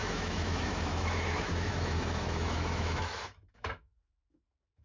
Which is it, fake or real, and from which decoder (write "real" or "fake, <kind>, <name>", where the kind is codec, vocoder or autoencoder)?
fake, autoencoder, DAC-VAE